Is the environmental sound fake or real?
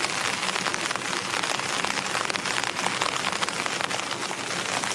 real